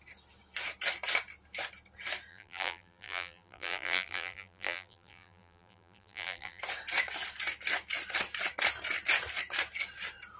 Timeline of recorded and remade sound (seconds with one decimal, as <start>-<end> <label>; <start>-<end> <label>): 0.0-2.3 recorded; 2.3-6.6 remade; 6.6-10.4 recorded